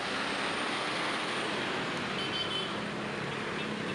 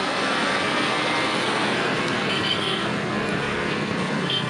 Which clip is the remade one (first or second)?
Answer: second